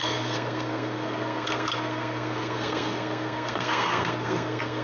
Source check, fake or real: fake